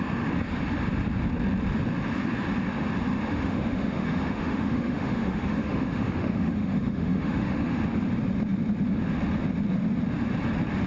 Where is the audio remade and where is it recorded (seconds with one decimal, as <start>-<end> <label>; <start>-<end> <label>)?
0.0-3.3 recorded; 3.3-7.8 remade; 7.8-10.9 recorded